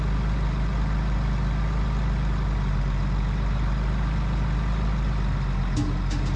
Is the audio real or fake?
real